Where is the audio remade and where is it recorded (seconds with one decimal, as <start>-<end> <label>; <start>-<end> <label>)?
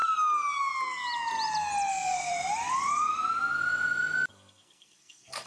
0.0-1.9 recorded; 1.9-2.3 remade; 2.3-4.3 recorded; 4.3-5.5 remade